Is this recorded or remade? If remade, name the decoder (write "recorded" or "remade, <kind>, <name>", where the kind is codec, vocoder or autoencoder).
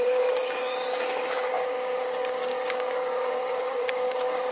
remade, codec, DAC